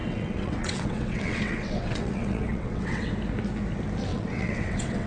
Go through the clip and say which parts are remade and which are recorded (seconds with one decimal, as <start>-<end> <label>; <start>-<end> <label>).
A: 0.0-3.1 remade; 3.1-4.1 recorded; 4.1-5.1 remade